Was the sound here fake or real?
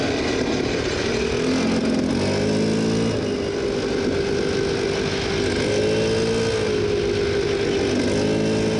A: real